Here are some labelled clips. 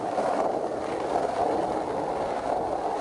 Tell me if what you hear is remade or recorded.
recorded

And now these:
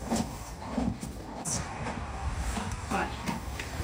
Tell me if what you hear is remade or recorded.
remade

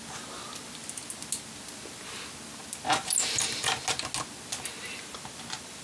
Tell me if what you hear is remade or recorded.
recorded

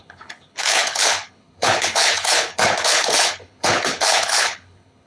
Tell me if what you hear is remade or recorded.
remade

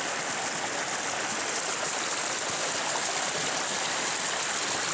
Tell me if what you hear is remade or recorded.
recorded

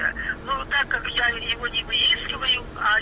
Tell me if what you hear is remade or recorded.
recorded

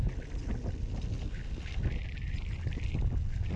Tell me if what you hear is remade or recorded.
recorded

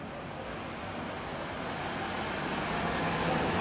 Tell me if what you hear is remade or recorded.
recorded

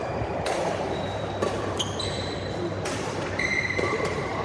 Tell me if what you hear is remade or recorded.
remade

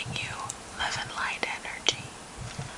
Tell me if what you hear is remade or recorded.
recorded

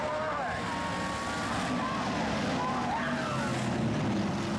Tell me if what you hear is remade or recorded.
recorded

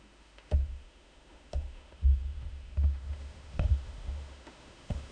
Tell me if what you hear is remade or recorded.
remade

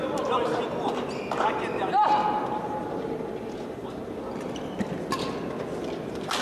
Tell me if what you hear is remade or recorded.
recorded